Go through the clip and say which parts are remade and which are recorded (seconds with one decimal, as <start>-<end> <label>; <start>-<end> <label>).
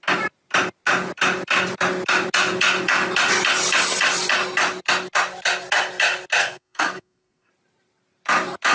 0.0-6.4 recorded; 6.4-7.5 remade; 7.5-8.7 recorded